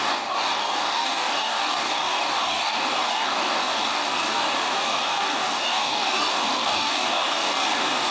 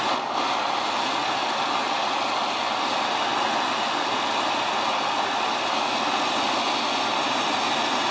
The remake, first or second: first